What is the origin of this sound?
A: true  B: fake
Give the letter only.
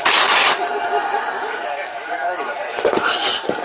A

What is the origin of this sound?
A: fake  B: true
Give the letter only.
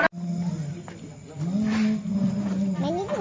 B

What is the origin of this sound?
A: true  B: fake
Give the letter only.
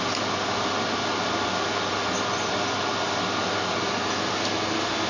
A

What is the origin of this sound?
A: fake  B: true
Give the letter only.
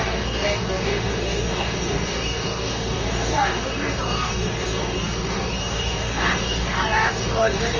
A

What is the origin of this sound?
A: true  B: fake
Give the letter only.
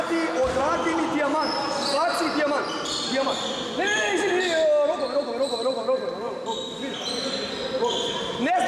A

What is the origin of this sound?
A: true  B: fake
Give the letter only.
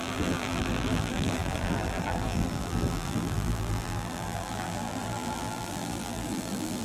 B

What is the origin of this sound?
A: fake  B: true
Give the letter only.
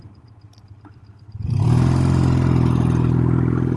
A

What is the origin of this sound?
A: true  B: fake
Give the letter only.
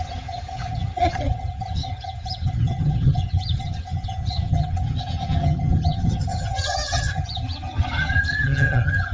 B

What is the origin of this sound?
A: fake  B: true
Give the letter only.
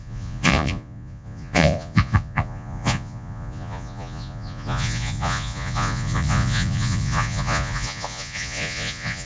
A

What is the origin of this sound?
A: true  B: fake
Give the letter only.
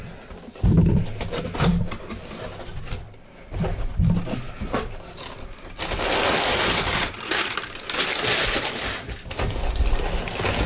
A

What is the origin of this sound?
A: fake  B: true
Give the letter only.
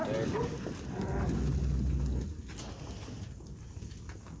B